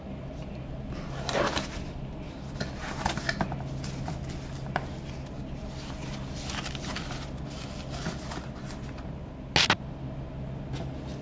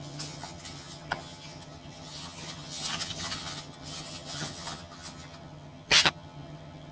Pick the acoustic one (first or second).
first